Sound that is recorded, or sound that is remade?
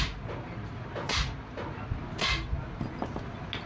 recorded